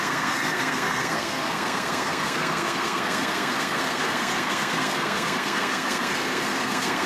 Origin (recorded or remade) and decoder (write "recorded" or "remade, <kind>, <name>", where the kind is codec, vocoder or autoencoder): remade, codec, SNAC